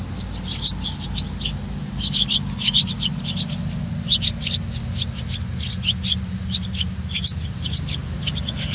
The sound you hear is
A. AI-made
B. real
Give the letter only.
B